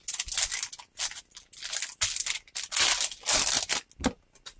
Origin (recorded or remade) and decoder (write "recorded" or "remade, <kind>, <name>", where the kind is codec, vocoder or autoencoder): recorded